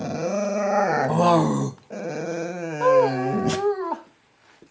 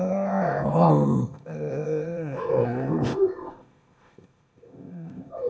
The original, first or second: first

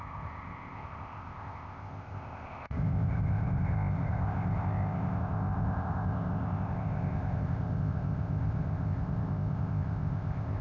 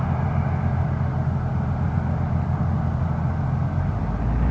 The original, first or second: second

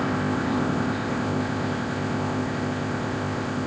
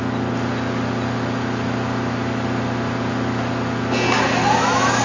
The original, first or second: second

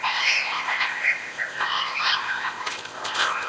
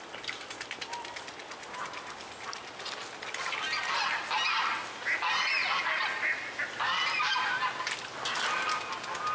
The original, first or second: second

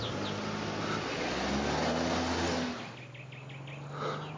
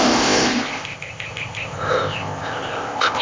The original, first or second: first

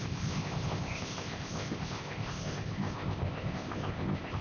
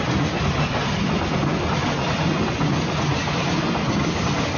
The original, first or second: second